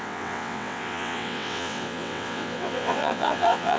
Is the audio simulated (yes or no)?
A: yes